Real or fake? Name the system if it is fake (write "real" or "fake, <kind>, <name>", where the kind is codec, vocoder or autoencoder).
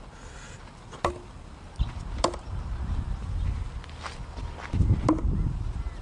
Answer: real